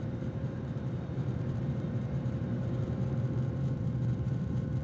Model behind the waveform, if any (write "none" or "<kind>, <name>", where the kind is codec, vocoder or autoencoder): vocoder, BigVGAN v2